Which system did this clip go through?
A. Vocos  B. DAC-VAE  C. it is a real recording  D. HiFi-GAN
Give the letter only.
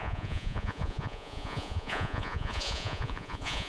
A